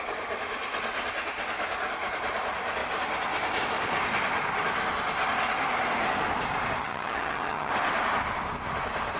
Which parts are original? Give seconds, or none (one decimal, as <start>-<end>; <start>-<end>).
0.0-6.8; 7.7-9.2